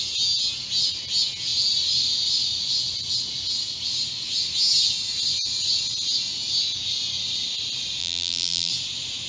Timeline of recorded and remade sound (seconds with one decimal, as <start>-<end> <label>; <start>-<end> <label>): 0.0-8.0 recorded; 8.0-8.7 remade; 8.7-9.3 recorded